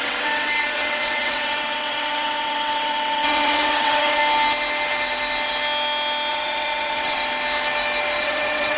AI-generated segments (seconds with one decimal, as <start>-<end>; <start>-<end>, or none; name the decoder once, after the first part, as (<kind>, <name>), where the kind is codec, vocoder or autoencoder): 0.0-4.2 (vocoder, WaveNeXt); 6.3-7.2; 8.2-8.8